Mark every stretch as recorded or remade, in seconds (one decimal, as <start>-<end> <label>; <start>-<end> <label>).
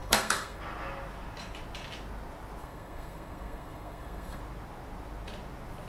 0.0-0.6 remade; 0.6-2.6 recorded; 2.6-4.4 remade; 4.4-5.9 recorded